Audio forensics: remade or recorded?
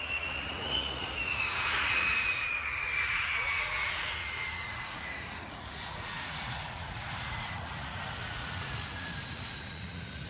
remade